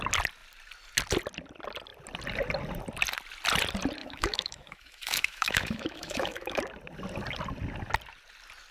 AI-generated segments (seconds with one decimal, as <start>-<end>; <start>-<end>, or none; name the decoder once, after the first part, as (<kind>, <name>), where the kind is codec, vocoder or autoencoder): 4.0-6.6 (autoencoder, DAC-VAE)